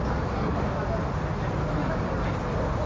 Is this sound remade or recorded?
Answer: recorded